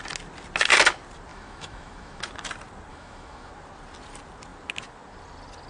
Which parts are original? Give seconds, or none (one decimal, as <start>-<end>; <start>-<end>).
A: 0.0-1.3; 2.2-2.9; 3.5-5.7